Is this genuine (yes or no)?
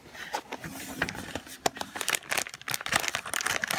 yes